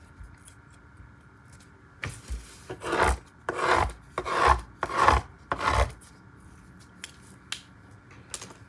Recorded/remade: recorded